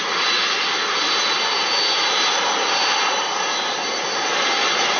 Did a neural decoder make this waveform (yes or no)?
no